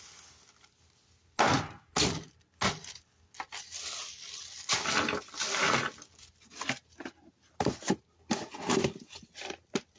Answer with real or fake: real